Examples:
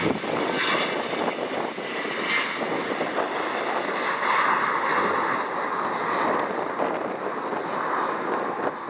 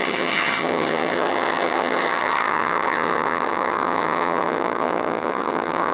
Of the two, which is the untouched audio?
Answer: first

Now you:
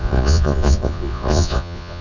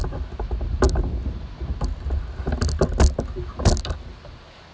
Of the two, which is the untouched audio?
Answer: second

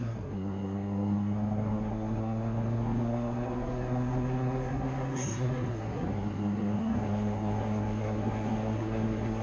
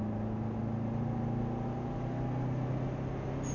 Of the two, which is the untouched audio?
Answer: second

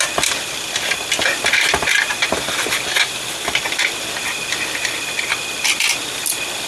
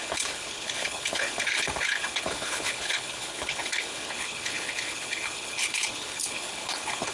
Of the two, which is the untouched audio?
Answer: first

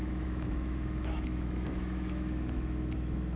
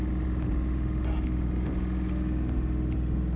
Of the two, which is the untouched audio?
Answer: second